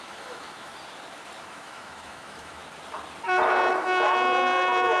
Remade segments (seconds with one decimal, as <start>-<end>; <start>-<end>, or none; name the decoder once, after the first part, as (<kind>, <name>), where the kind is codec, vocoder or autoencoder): 0.0-0.7 (autoencoder, DAC-VAE); 1.4-2.6; 3.7-5.0